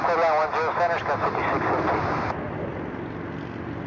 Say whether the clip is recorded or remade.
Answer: recorded